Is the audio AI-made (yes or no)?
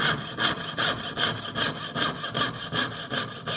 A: no